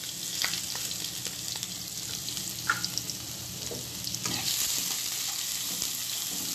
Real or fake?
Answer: real